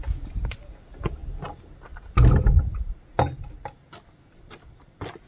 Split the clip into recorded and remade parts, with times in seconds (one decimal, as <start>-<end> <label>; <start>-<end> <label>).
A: 0.0-5.3 recorded